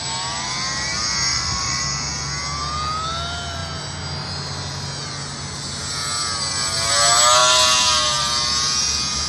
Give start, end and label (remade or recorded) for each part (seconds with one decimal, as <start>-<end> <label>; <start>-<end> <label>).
0.0-1.3 recorded; 1.3-1.8 remade; 1.8-9.3 recorded